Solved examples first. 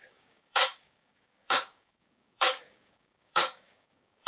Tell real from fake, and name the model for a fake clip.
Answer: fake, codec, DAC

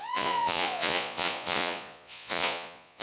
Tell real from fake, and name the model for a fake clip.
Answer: fake, vocoder, Vocos